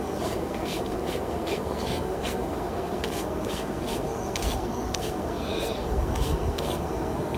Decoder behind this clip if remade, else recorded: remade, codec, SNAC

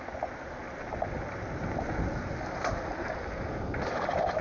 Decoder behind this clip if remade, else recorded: recorded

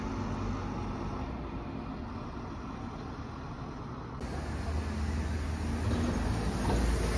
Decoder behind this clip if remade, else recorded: recorded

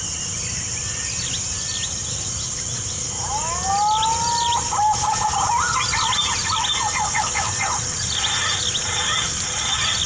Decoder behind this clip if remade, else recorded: recorded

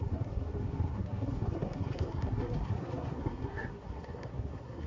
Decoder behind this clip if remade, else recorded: remade, codec, SNAC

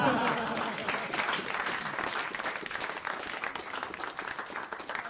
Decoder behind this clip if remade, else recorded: recorded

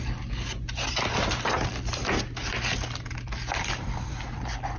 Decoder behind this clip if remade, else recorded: recorded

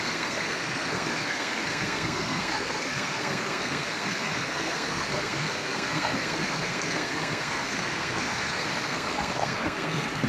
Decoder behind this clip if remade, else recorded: remade, codec, SNAC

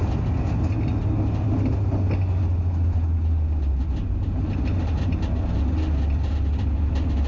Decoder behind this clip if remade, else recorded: recorded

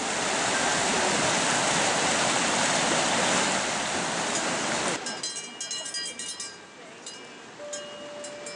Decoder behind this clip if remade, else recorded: recorded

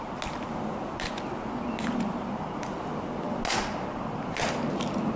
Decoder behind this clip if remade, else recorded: recorded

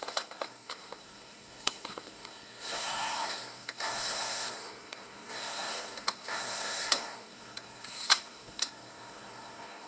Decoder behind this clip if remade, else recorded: remade, codec, SNAC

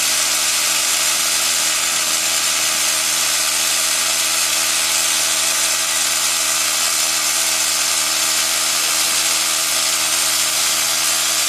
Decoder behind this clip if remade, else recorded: recorded